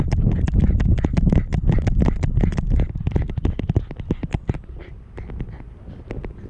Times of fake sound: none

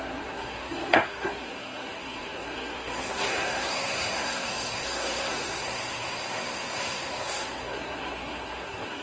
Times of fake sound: 0.0-9.0 (codec, SNAC)

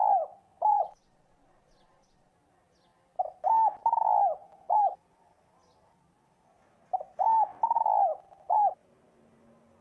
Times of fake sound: 0.7-2.3 (vocoder, Vocos)

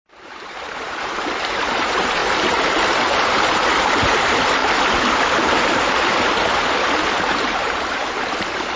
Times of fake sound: 0.0-2.2 (vocoder, BigVGAN v2); 3.5-8.8

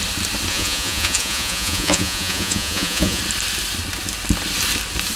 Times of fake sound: 0.5-3.2 (vocoder, Vocos)

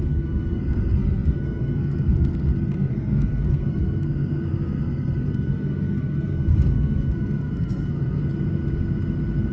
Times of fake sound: 0.0-8.2 (codec, SNAC)

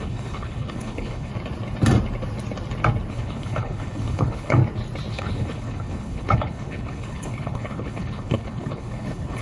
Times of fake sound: 0.0-1.3 (codec, HILCodec); 3.1-4.6; 5.1-9.4

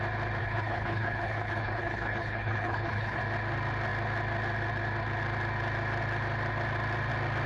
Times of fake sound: 0.4-3.2 (codec, HILCodec)